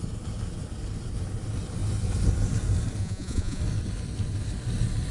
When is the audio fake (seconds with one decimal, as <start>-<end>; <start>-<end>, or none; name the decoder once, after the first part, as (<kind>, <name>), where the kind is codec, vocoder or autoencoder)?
3.0-3.6 (vocoder, Vocos)